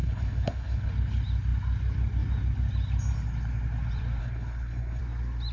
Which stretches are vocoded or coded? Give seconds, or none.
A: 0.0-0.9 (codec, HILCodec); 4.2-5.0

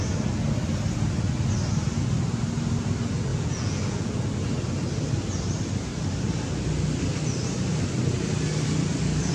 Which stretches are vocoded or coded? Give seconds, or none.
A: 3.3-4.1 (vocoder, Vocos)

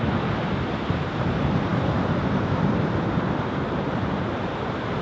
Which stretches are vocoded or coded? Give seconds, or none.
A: 0.0-5.0 (vocoder, BigVGAN v2)

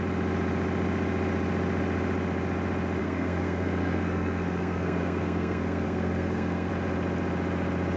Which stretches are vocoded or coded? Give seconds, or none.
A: 3.0-6.7 (codec, SNAC)

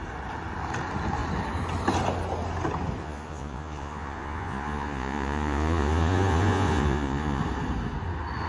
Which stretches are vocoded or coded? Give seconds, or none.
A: 3.0-7.4 (vocoder, Vocos)